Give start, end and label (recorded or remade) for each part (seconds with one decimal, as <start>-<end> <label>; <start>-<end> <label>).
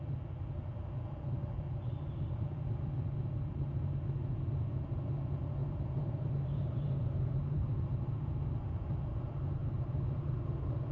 0.0-5.6 recorded; 5.6-8.3 remade; 8.3-9.6 recorded; 9.6-10.3 remade; 10.3-10.9 recorded